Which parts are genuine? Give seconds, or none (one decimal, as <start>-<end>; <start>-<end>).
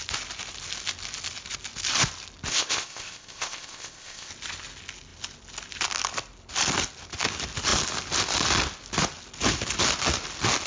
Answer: 0.0-2.5; 4.3-10.7